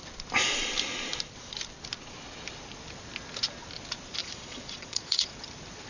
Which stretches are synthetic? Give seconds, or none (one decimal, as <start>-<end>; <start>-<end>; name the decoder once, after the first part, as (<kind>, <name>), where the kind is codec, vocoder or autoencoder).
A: 4.2-5.3 (vocoder, Vocos)